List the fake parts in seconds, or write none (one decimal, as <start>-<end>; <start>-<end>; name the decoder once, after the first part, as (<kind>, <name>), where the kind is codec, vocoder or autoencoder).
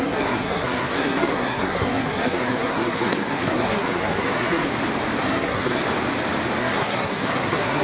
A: 0.0-4.7 (codec, SNAC); 5.2-5.8; 6.6-7.8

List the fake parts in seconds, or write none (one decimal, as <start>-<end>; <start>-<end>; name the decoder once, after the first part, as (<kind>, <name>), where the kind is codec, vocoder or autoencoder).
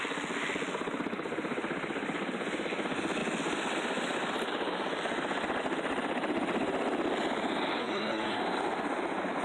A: 7.8-8.4 (codec, SNAC)